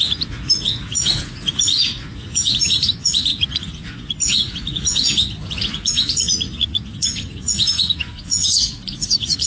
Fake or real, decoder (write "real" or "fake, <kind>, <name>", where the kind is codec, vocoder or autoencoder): fake, vocoder, Vocos